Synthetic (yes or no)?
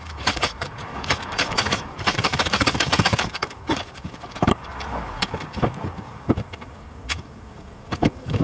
yes